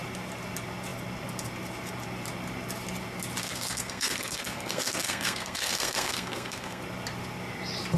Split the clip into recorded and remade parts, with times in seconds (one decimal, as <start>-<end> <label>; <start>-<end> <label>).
0.0-3.4 recorded; 3.4-6.8 remade; 6.8-8.0 recorded